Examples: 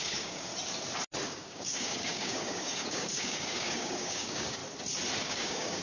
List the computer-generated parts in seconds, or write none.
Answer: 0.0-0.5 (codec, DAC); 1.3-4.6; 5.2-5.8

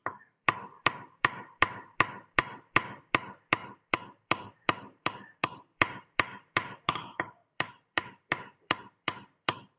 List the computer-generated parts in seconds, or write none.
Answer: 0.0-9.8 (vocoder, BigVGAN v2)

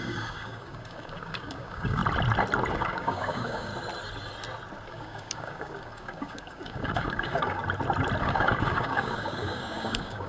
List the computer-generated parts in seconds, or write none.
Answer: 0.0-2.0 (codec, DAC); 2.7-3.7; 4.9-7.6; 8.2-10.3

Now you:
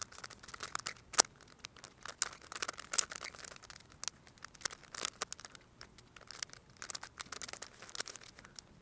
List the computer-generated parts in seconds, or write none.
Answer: none

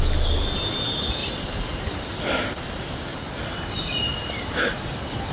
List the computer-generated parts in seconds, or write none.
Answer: 1.2-4.4 (vocoder, BigVGAN v2)